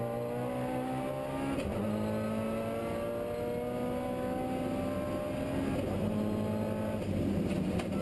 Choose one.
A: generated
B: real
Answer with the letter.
B